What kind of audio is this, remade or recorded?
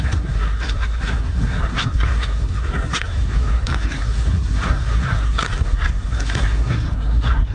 remade